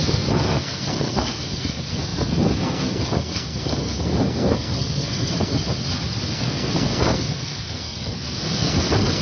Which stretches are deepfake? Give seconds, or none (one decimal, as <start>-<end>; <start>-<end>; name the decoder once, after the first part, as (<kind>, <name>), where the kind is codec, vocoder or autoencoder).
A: 0.0-5.6 (codec, SNAC); 6.3-9.2

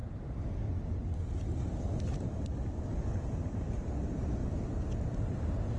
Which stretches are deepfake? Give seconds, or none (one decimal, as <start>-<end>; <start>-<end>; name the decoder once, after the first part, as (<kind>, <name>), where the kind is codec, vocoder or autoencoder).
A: none

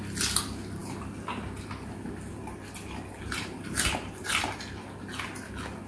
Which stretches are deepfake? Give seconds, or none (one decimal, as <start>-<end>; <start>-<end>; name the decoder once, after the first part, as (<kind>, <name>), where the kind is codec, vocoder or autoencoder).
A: none

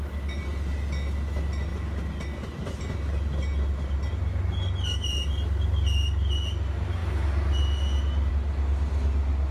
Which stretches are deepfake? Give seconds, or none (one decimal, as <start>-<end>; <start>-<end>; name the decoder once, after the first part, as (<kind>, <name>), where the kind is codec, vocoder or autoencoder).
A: none

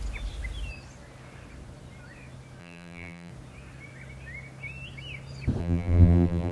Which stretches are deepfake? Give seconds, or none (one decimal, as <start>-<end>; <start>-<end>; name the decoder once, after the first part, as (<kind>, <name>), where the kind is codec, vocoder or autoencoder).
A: 2.6-3.3 (vocoder, BigVGAN v2); 5.6-6.5